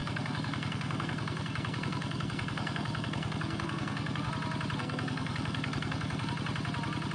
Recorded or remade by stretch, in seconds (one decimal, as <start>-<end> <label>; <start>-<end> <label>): 0.0-4.3 remade; 4.3-4.8 recorded; 4.8-6.3 remade; 6.3-7.1 recorded